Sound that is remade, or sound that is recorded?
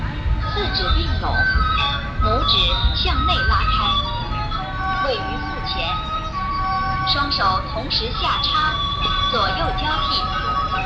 recorded